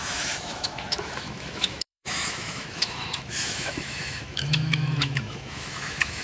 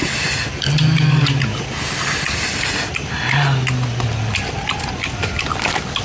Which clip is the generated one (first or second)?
first